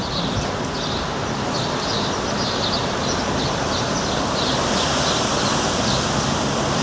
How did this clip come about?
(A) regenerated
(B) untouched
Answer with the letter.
B